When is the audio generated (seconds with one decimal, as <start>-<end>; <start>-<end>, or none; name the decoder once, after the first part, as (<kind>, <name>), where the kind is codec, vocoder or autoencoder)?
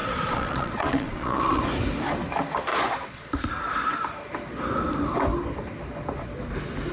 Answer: 0.0-1.6 (vocoder, Vocos); 2.7-3.5